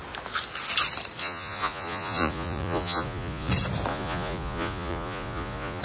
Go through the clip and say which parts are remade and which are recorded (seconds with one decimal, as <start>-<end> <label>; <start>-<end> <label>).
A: 0.0-1.2 recorded; 1.2-3.5 remade; 3.5-3.9 recorded; 3.9-5.8 remade